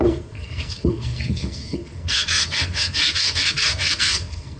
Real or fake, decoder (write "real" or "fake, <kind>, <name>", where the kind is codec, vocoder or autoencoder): fake, codec, SNAC